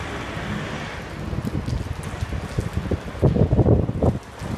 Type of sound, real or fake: real